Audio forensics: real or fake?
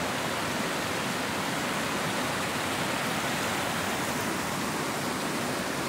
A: real